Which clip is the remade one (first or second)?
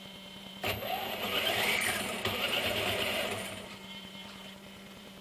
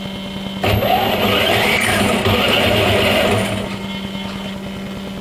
first